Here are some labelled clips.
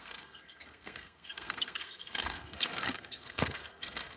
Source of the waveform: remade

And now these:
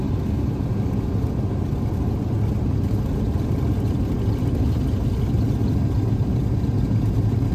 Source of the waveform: recorded